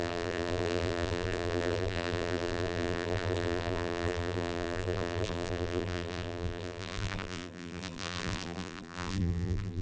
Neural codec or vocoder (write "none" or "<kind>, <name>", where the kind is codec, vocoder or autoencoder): vocoder, BigVGAN v2